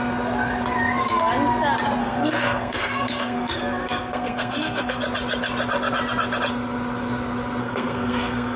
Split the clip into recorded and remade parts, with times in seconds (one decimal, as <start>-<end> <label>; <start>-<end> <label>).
0.0-2.0 recorded; 2.0-5.0 remade; 5.0-7.6 recorded; 7.6-8.6 remade